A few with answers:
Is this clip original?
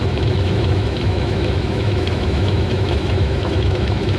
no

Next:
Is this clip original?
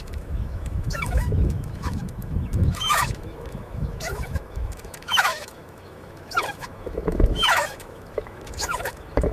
no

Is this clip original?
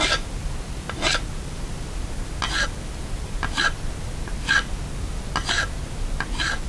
yes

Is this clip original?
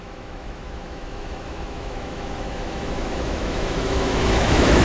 no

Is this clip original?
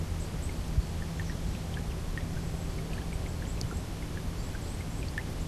yes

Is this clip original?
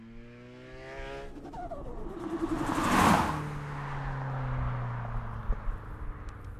yes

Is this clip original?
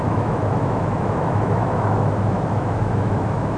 no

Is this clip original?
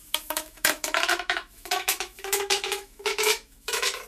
no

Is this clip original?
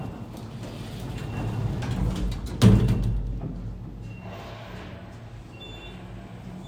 yes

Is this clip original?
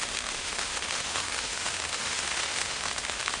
no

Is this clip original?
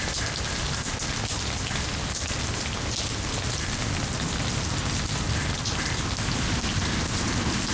yes